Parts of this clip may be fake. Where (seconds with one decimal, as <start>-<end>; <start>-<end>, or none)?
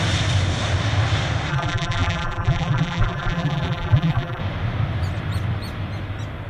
1.5-4.4